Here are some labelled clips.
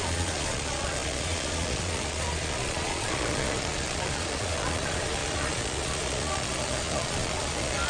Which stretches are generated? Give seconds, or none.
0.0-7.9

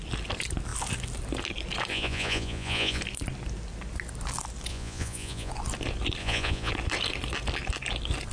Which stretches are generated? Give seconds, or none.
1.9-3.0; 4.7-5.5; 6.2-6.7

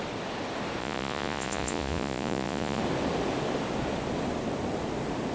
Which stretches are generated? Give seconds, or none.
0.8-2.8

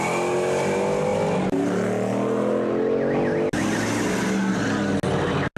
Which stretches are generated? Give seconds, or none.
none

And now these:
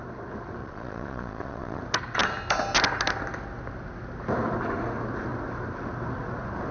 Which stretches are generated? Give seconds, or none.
0.6-1.8

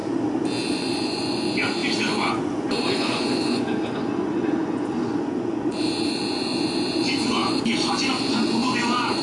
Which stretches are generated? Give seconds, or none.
0.7-9.2